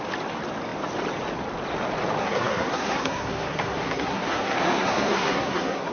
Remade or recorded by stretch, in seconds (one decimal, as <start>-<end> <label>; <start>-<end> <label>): 0.0-2.2 recorded; 2.2-5.9 remade

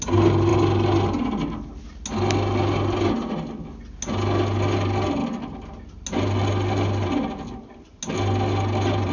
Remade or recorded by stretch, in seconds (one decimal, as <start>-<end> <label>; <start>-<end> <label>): 0.0-9.1 recorded

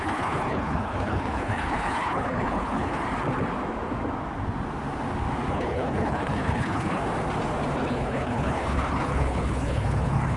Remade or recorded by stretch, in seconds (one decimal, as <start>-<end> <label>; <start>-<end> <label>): 0.0-3.0 remade; 3.0-5.5 recorded; 5.5-7.0 remade; 7.0-7.9 recorded; 7.9-10.4 remade